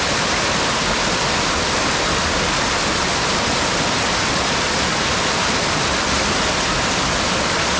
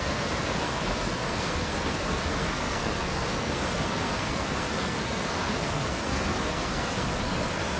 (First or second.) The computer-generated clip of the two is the second